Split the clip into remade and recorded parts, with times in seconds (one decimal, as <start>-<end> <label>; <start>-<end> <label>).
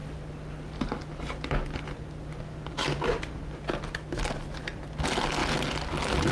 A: 0.0-6.3 recorded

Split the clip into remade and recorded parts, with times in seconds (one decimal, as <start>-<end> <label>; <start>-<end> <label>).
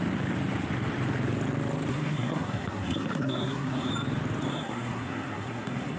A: 0.0-1.9 recorded; 1.9-3.9 remade; 3.9-4.5 recorded; 4.5-6.0 remade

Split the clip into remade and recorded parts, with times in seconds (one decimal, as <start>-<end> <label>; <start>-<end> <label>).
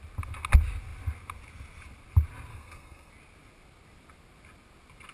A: 0.0-2.5 recorded; 2.5-3.1 remade; 3.1-5.1 recorded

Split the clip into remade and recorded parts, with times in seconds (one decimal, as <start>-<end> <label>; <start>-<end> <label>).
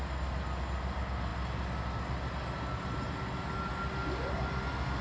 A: 0.0-5.0 recorded